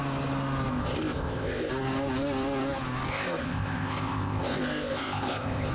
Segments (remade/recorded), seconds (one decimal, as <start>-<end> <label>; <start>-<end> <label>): 0.0-0.7 recorded; 0.7-1.7 remade; 1.7-3.1 recorded; 3.1-5.7 remade